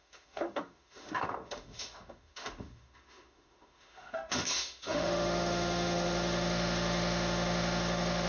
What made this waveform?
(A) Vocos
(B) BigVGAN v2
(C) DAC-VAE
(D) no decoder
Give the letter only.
C